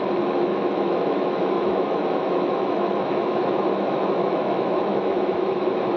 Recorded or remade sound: remade